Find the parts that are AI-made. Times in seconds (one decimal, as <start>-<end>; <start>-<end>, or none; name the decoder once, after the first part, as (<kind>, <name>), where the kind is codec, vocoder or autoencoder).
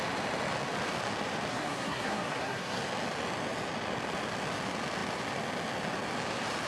1.5-2.8 (codec, SNAC)